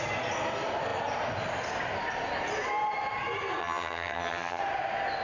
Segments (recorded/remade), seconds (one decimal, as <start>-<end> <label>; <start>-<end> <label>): 0.0-3.6 recorded; 3.6-4.6 remade; 4.6-5.2 recorded